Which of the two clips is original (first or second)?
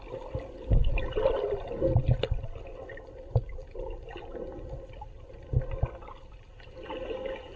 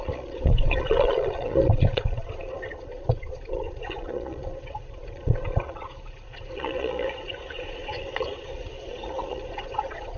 first